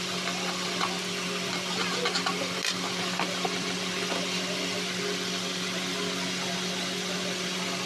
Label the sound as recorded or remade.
recorded